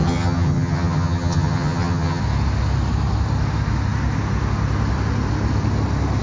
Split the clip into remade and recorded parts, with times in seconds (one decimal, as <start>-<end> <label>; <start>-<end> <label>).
0.0-2.2 remade; 2.2-6.2 recorded